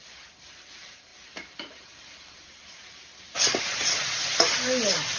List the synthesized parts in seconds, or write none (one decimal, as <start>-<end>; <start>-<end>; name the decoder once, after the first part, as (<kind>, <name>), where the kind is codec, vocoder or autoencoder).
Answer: 0.0-1.1 (vocoder, BigVGAN v2); 1.7-3.1; 3.6-5.2